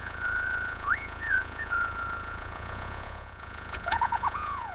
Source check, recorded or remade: remade